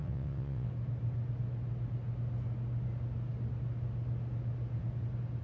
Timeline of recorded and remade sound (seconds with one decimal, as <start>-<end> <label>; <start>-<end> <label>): 0.0-0.7 remade; 0.7-5.4 recorded